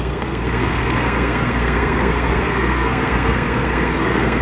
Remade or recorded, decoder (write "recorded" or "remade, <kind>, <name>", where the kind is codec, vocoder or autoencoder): remade, codec, SNAC